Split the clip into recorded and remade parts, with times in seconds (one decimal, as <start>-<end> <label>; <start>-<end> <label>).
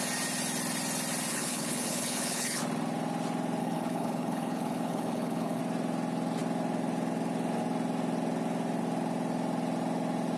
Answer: 0.0-1.3 recorded; 1.3-2.6 remade; 2.6-3.6 recorded; 3.6-5.6 remade; 5.6-10.4 recorded